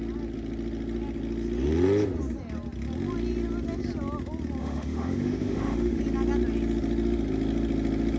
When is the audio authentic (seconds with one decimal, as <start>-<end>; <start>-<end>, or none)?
0.0-4.6; 6.0-8.2